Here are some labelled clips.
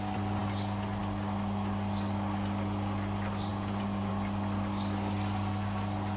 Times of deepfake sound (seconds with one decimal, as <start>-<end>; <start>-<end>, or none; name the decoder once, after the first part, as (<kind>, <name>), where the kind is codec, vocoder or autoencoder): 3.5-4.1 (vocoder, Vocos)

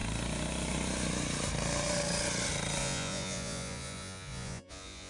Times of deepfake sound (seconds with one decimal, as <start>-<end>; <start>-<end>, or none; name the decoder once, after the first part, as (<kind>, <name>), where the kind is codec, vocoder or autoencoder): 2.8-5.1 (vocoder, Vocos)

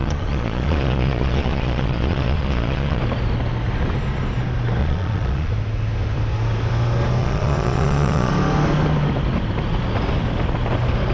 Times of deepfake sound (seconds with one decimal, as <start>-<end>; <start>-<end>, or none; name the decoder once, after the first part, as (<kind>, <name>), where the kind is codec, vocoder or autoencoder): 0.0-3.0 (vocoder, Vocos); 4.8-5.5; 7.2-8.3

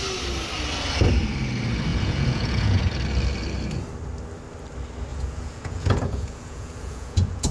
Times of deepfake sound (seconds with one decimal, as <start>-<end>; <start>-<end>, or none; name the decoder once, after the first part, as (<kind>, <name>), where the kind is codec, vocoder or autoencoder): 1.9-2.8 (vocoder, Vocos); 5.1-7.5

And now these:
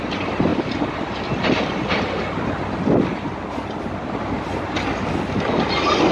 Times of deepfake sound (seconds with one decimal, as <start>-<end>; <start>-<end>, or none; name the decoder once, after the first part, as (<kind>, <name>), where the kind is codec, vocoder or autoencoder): none